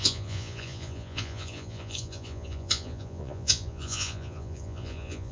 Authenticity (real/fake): fake